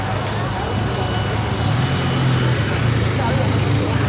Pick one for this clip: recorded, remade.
recorded